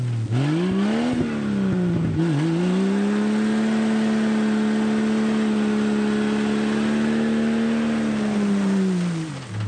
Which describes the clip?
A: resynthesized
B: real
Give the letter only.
B